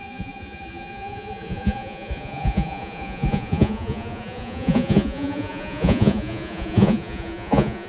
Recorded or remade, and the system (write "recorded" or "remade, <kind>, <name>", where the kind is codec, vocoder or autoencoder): remade, vocoder, Vocos